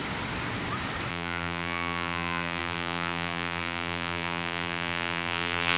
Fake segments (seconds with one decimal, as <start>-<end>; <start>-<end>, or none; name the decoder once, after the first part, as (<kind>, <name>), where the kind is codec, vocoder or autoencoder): 1.1-5.8 (vocoder, BigVGAN v2)